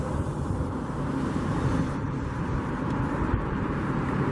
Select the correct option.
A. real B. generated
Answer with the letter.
B